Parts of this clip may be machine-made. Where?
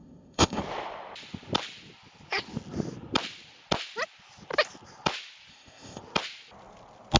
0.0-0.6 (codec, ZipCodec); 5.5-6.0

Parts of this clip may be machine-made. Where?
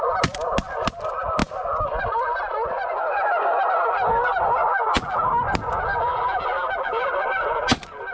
4.6-5.3 (vocoder, BigVGAN v2); 5.9-7.0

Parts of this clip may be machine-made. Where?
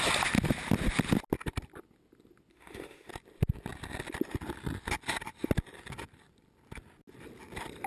2.5-3.1 (autoencoder, DAC-VAE)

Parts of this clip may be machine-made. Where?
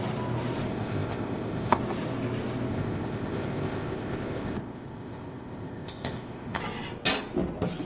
0.7-1.8 (codec, ZipCodec); 2.7-6.6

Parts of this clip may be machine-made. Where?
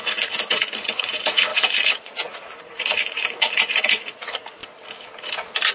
0.0-4.6 (vocoder, Vocos)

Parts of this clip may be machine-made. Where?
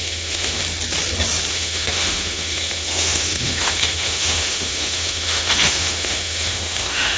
0.0-0.6 (autoencoder, DAC-VAE); 1.5-7.2